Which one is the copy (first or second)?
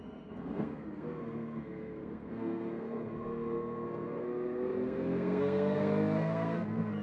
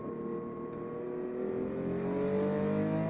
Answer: first